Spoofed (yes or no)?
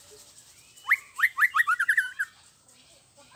no